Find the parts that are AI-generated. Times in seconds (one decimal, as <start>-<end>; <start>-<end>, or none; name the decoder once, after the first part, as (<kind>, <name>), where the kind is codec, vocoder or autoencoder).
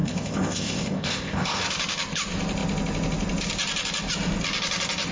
0.0-1.6 (codec, ZipCodec)